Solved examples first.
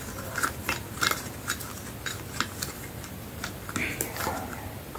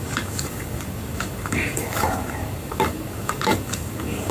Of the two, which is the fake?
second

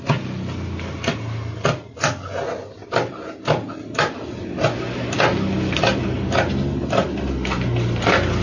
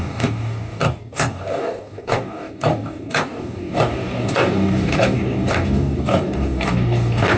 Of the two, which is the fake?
second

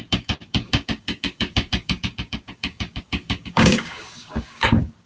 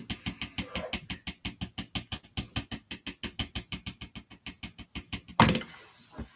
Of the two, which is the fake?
first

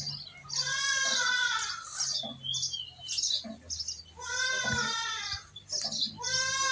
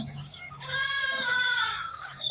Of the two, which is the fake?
second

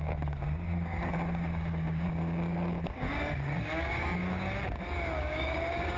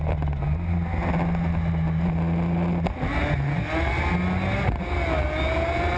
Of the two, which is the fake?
first